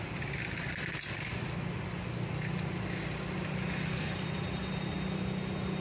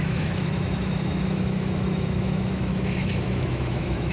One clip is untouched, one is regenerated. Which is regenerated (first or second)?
second